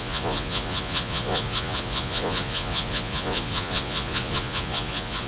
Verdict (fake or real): fake